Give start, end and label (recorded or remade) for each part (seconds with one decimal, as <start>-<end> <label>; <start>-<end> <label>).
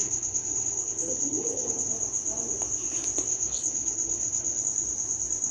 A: 0.0-1.9 remade; 1.9-3.3 recorded; 3.3-4.6 remade; 4.6-5.5 recorded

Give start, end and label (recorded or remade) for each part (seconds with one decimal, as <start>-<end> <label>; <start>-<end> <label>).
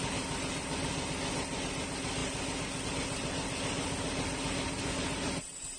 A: 0.0-5.8 recorded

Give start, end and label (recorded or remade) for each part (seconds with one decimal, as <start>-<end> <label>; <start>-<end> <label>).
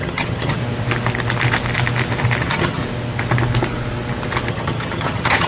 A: 0.0-0.6 remade; 0.6-2.4 recorded; 2.4-2.8 remade; 2.8-4.5 recorded; 4.5-5.5 remade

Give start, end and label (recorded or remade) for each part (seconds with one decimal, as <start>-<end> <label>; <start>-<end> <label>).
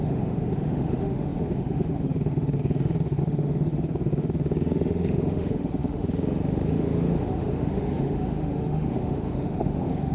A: 0.0-10.1 remade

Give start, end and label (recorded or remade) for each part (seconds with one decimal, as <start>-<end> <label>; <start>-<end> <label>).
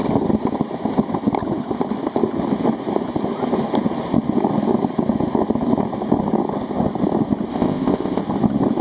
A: 0.0-7.5 recorded; 7.5-8.2 remade; 8.2-8.8 recorded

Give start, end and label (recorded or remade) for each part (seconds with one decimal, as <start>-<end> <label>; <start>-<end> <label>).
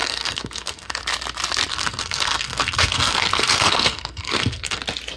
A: 0.0-1.0 remade; 1.0-1.7 recorded; 1.7-4.8 remade; 4.8-5.2 recorded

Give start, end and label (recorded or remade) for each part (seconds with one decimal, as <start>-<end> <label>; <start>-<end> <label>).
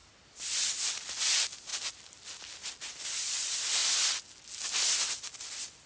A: 0.0-5.9 recorded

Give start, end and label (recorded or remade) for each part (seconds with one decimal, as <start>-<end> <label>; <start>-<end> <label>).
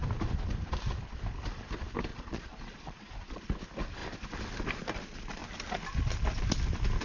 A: 0.0-2.1 recorded; 2.1-3.4 remade; 3.4-7.0 recorded